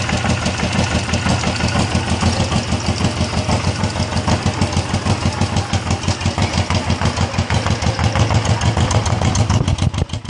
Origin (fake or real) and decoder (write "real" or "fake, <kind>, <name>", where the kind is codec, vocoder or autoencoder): real